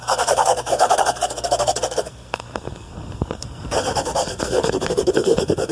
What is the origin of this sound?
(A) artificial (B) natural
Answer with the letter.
A